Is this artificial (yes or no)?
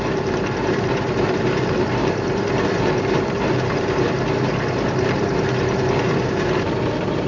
yes